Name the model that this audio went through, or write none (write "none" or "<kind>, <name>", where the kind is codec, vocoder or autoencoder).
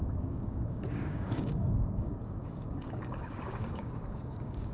codec, DAC